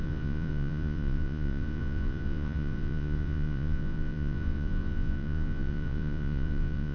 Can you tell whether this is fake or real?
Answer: fake